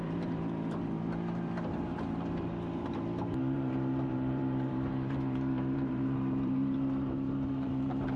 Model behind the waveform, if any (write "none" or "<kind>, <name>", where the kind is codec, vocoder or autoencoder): vocoder, BigVGAN v2